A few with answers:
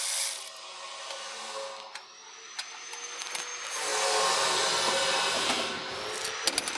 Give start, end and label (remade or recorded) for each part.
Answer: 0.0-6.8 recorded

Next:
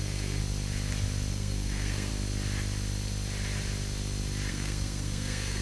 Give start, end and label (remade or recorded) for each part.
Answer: 0.0-0.4 remade; 0.4-1.3 recorded; 1.3-2.1 remade; 2.1-4.5 recorded; 4.5-5.6 remade

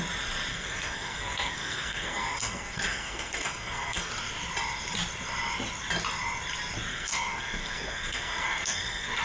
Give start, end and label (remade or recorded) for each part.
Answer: 0.0-0.5 recorded; 0.5-4.1 remade; 4.1-6.9 recorded; 6.9-9.2 remade

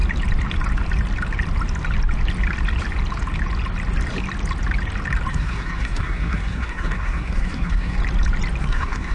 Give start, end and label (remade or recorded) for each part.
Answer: 0.0-5.3 recorded; 5.3-8.0 remade; 8.0-8.6 recorded; 8.6-9.1 remade

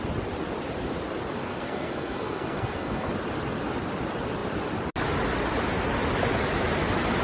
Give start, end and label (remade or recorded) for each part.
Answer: 0.0-1.4 recorded; 1.4-3.1 remade; 3.1-7.2 recorded

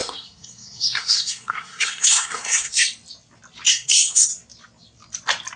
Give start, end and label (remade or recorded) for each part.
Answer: 0.0-2.8 remade; 2.8-3.7 recorded; 3.7-4.3 remade; 4.3-5.6 recorded